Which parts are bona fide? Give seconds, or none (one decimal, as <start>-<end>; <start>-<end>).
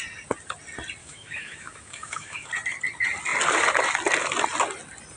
0.0-1.0; 2.5-5.2